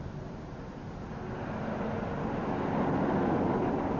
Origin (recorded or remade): recorded